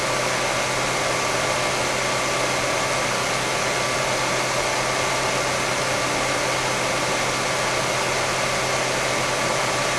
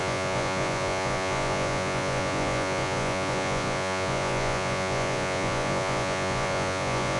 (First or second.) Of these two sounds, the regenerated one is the second